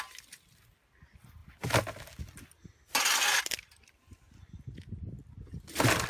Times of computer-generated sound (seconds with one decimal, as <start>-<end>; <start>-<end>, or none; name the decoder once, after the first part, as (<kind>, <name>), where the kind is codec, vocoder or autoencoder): none

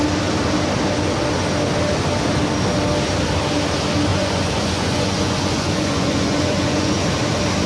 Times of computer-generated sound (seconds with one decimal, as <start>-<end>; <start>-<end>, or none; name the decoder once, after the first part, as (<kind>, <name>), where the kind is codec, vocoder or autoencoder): 4.1-7.1 (vocoder, Vocos)

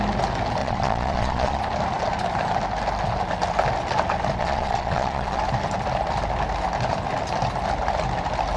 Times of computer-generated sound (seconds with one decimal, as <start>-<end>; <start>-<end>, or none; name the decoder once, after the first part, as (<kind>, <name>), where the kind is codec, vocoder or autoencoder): 0.6-1.6 (vocoder, Vocos); 4.4-5.4

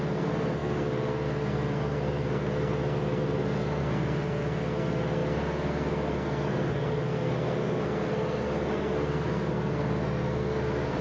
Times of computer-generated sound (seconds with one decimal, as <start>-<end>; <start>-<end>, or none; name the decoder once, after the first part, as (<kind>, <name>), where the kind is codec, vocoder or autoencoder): 0.0-11.0 (codec, SNAC)

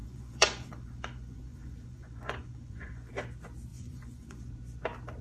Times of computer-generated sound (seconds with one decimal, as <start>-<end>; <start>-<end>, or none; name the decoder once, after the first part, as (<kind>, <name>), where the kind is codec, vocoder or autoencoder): 0.0-3.1 (vocoder, Vocos); 3.7-4.4

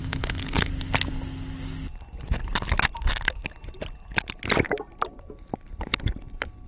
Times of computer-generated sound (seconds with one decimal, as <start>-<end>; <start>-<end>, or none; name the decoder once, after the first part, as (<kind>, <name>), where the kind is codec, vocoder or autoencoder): 0.0-0.7 (codec, HILCodec)